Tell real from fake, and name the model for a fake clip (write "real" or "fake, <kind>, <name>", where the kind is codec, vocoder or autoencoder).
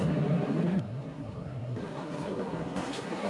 fake, codec, SNAC